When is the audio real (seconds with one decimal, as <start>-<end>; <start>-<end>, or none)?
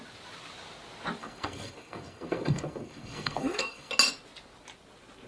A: 0.0-1.2; 3.9-5.3